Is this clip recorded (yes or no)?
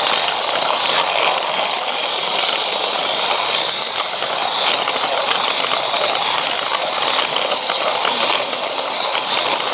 yes